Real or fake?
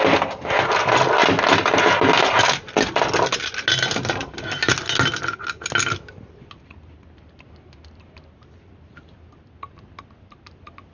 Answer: real